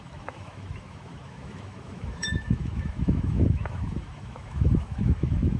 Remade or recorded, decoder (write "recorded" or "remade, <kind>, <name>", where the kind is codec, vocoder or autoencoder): remade, autoencoder, DAC-VAE